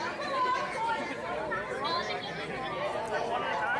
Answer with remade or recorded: recorded